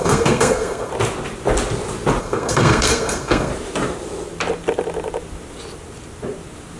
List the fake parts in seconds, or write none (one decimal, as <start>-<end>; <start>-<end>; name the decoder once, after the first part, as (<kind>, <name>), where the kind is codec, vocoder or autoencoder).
0.0-0.9 (codec, SNAC); 2.2-3.5